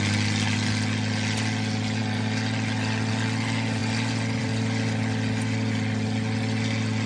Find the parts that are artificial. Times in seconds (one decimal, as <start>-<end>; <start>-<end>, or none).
none